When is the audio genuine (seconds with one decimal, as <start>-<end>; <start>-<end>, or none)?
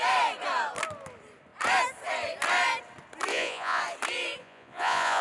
0.0-3.3; 3.8-4.4